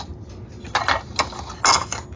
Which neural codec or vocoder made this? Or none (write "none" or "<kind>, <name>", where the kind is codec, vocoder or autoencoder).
none